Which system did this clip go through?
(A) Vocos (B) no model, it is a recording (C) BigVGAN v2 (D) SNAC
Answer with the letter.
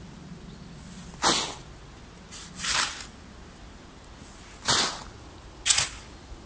B